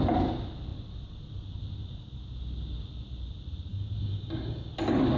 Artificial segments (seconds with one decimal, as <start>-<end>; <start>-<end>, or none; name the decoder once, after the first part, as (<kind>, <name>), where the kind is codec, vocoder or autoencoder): 3.7-4.7 (codec, DAC)